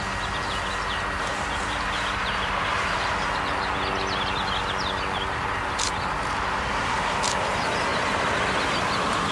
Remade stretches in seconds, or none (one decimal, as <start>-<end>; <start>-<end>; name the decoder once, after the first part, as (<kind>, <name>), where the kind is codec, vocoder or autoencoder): 1.3-3.2 (vocoder, BigVGAN v2)